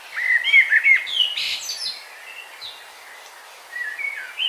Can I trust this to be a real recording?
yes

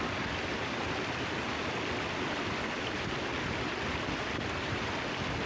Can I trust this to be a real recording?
yes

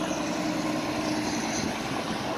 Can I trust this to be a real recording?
yes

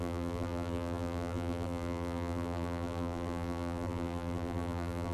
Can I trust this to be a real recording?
no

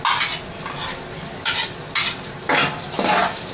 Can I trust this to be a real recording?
yes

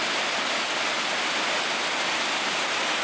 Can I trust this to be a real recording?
yes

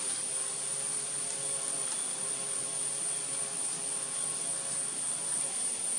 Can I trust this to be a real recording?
yes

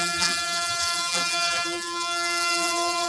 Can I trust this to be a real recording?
no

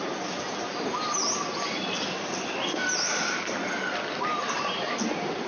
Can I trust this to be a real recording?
yes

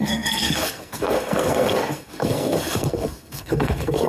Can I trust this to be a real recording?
no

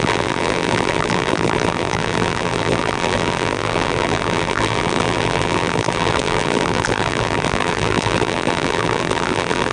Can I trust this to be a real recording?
no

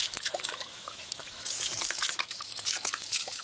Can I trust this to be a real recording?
no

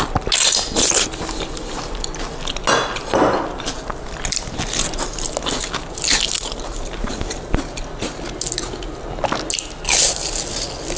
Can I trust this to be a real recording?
yes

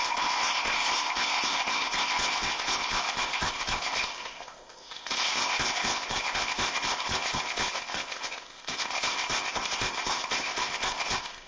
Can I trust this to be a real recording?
no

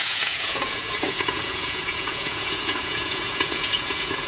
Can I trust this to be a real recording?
no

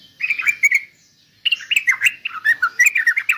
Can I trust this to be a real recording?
yes